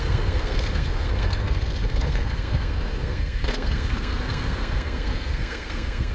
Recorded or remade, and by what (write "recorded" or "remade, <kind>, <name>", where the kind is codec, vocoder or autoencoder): remade, codec, SNAC